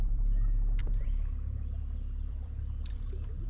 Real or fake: fake